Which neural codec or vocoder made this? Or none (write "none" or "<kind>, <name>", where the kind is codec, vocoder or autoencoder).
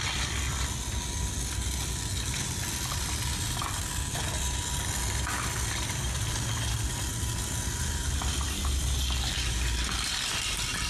none